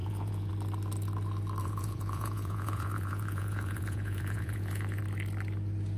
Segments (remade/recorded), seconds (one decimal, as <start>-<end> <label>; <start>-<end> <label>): 0.0-0.5 remade; 0.5-1.6 recorded; 1.6-5.0 remade; 5.0-6.0 recorded